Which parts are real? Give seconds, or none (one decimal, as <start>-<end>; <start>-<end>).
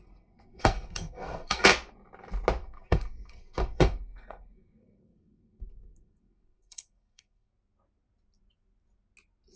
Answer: 1.7-2.6; 7.5-9.6